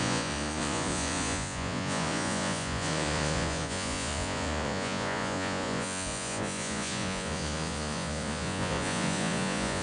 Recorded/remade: remade